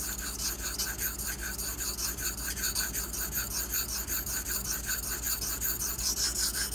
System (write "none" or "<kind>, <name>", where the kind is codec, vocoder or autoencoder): none